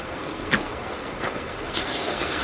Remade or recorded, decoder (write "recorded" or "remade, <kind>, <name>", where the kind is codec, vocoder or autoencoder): remade, codec, SNAC